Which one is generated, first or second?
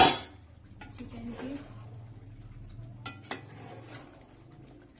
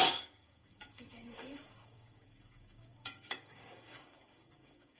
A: second